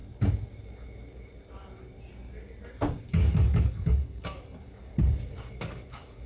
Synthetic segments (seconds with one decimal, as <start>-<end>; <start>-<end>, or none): 3.1-4.9; 5.5-6.3

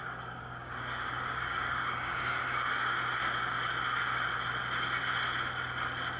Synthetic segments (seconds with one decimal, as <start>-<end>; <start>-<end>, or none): 0.0-2.4

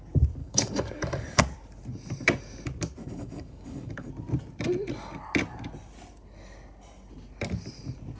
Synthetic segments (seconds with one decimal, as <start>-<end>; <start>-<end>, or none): 0.4-1.4; 3.0-4.1

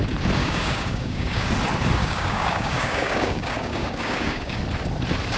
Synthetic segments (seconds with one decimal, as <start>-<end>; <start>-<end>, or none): 0.4-1.5; 2.0-4.6

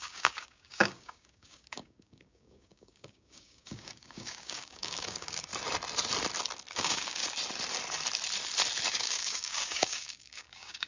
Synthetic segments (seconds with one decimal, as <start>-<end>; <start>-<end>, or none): 0.0-5.5; 6.7-7.2; 8.9-10.9

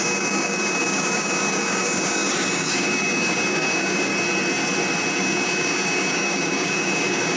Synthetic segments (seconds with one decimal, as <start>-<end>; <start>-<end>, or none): 0.0-4.1; 5.2-7.4

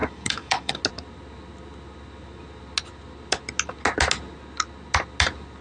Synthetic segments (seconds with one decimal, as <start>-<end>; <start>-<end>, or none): 0.0-0.8

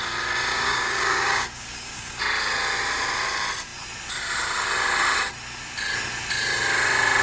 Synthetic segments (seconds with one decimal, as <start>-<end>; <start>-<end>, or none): 0.5-2.2